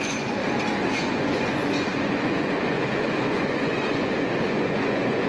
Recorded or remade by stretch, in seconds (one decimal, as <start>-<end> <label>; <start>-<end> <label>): 0.0-0.4 remade; 0.4-0.9 recorded; 0.9-5.3 remade